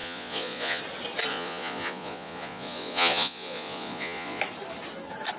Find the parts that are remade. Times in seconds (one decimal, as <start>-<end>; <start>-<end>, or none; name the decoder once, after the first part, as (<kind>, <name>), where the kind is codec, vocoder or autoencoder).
0.0-0.8 (vocoder, Vocos); 1.3-4.4